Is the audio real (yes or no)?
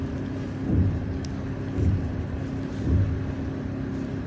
yes